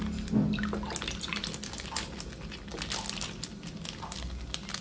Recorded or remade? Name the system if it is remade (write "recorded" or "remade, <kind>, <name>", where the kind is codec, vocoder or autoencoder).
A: recorded